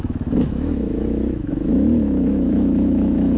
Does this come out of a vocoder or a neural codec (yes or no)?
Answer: yes